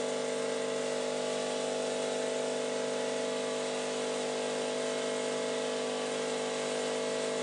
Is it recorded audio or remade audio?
recorded